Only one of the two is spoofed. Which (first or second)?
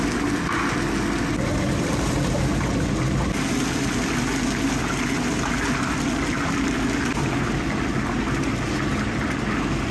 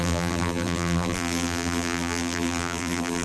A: second